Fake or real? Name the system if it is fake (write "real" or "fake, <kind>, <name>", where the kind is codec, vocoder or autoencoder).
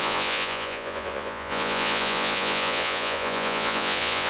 fake, vocoder, Vocos